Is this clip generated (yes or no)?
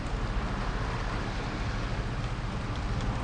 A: yes